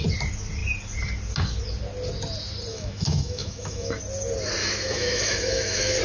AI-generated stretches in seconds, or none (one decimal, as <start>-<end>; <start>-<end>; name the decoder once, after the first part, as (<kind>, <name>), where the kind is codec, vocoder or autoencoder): 2.7-4.0 (autoencoder, DAC-VAE); 4.6-6.0